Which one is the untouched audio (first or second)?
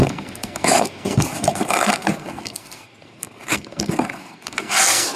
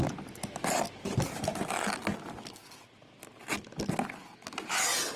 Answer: second